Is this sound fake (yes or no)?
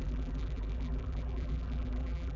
yes